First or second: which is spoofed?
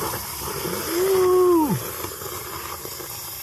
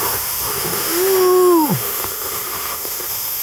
second